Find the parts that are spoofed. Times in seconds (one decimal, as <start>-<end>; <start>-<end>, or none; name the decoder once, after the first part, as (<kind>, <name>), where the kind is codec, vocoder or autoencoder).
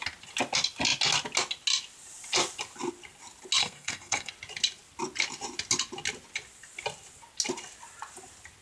3.6-4.3 (codec, SNAC)